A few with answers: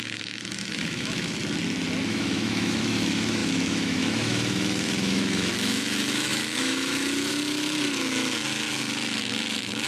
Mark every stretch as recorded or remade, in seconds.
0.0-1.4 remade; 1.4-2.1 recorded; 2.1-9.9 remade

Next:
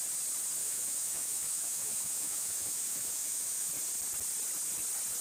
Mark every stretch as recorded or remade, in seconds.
0.0-0.6 recorded; 0.6-3.7 remade; 3.7-5.2 recorded

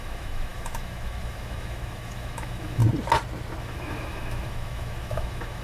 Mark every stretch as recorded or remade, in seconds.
0.0-2.8 remade; 2.8-3.6 recorded; 3.6-5.6 remade

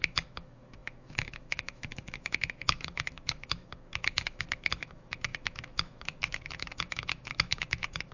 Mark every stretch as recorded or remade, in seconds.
0.0-8.1 remade

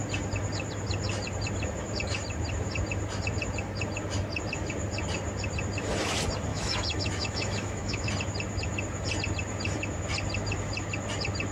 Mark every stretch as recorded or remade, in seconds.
0.0-6.5 recorded; 6.5-8.1 remade; 8.1-11.5 recorded

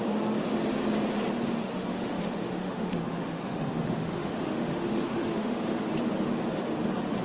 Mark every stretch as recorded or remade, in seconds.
0.0-1.6 recorded; 1.6-5.8 remade; 5.8-7.2 recorded